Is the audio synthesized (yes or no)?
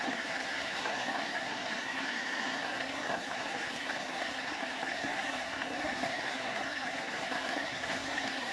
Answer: yes